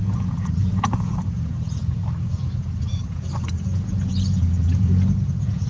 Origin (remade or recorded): remade